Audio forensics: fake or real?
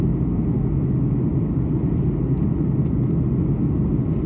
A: real